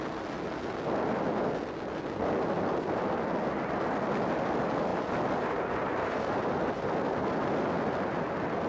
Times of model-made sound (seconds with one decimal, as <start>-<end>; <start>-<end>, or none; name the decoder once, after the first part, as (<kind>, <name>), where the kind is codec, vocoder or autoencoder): none